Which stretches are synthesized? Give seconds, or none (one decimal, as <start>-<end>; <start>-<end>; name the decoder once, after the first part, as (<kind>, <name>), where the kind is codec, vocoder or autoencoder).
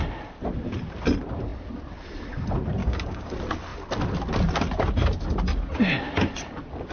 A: 2.8-3.3 (codec, DAC)